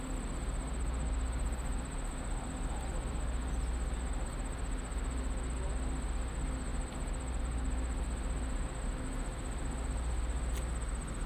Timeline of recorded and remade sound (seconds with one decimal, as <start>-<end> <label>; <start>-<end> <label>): 0.0-11.3 recorded